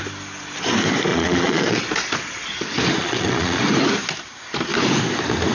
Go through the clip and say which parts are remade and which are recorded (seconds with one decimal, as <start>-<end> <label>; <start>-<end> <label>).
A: 0.0-1.1 recorded; 1.1-1.8 remade; 1.8-3.0 recorded; 3.0-3.6 remade; 3.6-5.5 recorded